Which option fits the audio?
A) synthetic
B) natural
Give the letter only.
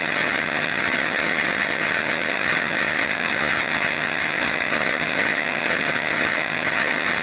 A